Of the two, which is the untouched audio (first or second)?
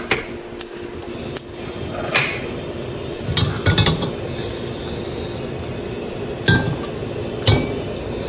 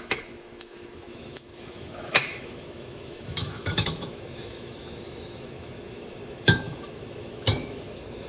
first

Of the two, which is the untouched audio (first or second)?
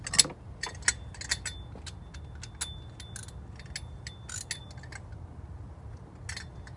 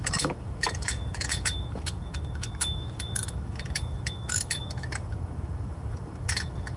first